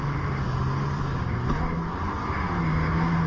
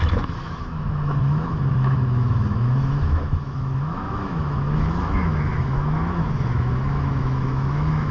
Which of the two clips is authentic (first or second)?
first